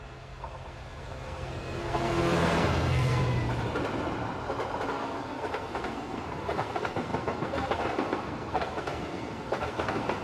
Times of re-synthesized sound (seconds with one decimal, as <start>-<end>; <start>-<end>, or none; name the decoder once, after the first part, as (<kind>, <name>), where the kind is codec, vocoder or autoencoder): 0.0-3.2 (codec, SNAC); 4.9-10.2